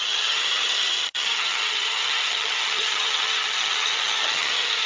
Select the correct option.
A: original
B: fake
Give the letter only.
B